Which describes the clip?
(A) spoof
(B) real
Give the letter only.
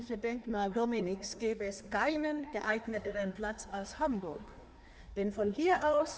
A